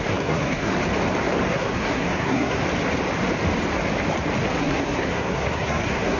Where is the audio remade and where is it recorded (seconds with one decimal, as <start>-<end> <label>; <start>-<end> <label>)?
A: 0.0-0.7 remade; 0.7-1.5 recorded; 1.5-2.6 remade; 2.6-4.6 recorded; 4.6-6.2 remade

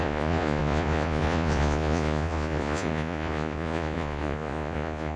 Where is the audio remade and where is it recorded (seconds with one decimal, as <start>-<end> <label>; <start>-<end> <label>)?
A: 0.0-5.2 remade

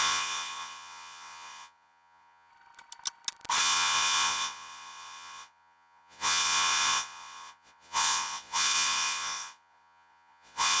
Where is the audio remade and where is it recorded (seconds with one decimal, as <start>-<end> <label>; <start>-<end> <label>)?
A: 0.0-2.5 remade; 2.5-3.6 recorded; 3.6-10.8 remade

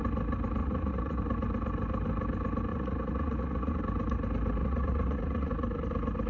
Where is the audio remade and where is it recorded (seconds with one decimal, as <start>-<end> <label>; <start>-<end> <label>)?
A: 0.0-0.6 recorded; 0.6-1.2 remade; 1.2-2.7 recorded; 2.7-3.8 remade; 3.8-4.6 recorded; 4.6-5.5 remade; 5.5-6.3 recorded

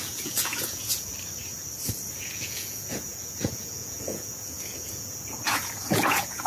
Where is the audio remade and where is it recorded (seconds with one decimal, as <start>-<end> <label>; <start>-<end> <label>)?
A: 0.0-1.1 remade; 1.1-2.2 recorded; 2.2-6.5 remade